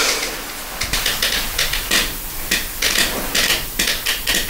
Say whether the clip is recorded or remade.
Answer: recorded